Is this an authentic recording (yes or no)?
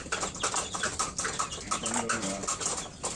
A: yes